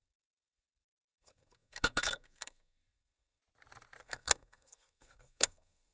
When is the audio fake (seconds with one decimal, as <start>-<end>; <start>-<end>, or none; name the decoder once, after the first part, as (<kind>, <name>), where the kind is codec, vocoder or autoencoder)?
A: 0.0-3.4 (codec, SNAC); 4.0-5.9